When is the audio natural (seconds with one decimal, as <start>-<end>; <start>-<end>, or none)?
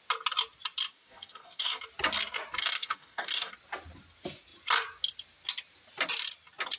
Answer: 0.0-0.9; 1.8-2.6; 3.5-6.8